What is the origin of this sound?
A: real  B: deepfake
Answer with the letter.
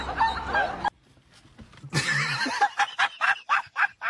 A